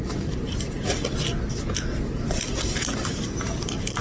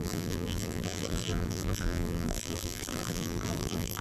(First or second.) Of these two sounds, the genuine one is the first